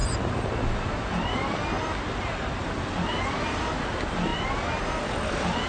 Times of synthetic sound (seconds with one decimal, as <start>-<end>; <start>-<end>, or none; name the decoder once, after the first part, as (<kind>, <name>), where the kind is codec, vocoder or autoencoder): none